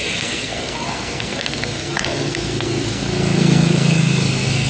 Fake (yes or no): yes